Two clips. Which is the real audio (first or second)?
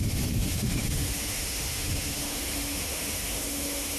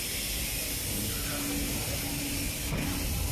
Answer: second